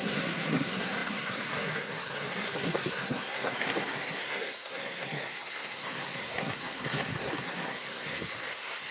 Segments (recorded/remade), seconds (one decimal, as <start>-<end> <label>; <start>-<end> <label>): 0.0-8.9 remade